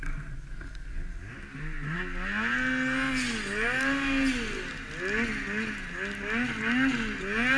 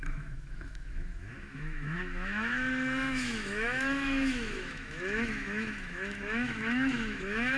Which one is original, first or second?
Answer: first